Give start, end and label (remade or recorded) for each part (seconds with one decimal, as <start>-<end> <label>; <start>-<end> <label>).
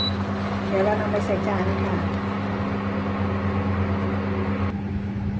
0.0-5.4 recorded